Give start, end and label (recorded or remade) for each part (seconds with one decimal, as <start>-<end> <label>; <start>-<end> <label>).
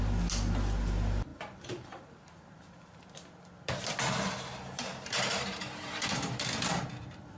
0.0-1.3 recorded; 1.3-3.0 remade; 3.0-4.5 recorded; 4.5-7.4 remade